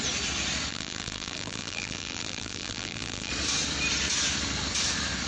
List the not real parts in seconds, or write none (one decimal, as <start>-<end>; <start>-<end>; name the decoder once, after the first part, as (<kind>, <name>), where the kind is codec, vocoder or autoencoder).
0.7-3.3 (vocoder, BigVGAN v2)